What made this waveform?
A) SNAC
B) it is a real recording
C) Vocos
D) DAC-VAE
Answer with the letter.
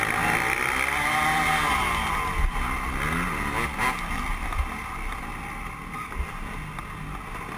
B